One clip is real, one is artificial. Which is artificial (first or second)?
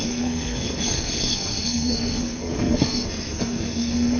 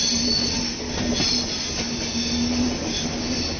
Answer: first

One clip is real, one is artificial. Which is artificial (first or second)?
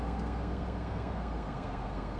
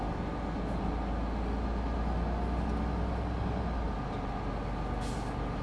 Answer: first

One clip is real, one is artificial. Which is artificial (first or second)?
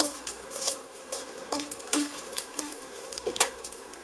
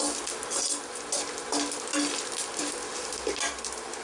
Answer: first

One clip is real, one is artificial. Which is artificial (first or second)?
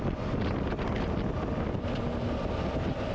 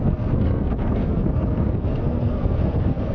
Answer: second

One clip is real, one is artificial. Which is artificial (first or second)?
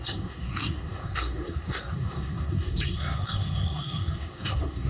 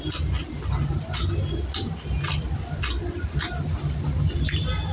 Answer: first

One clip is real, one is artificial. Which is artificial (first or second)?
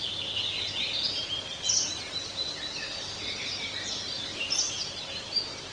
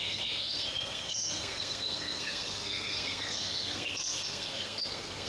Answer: second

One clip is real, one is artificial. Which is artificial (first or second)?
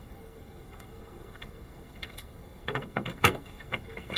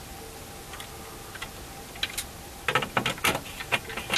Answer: first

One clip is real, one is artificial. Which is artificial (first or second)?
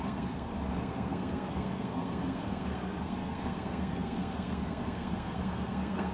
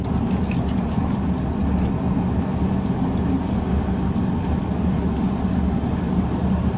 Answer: first